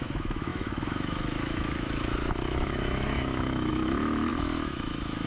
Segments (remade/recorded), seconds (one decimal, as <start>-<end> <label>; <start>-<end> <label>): 0.0-5.3 remade